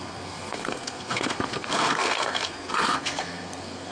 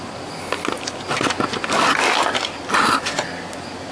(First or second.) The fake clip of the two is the first